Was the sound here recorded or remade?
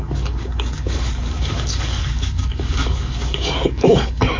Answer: remade